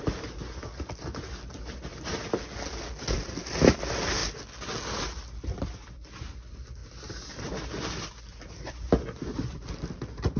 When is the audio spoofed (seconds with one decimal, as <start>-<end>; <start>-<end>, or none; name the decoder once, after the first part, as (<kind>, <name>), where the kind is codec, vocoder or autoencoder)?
none